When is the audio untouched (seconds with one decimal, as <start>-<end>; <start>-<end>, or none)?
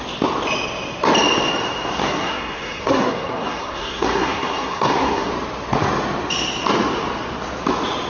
0.0-2.0; 5.3-8.1